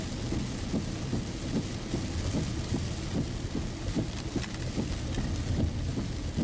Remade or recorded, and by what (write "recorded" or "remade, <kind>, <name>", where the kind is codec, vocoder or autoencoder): recorded